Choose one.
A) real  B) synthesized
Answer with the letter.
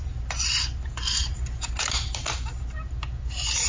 A